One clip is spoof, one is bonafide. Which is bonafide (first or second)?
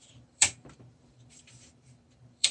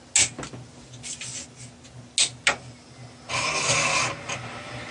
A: second